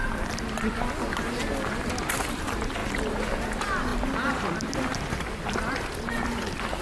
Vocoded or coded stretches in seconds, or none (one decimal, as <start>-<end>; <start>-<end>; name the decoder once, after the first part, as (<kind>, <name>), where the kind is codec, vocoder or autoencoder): none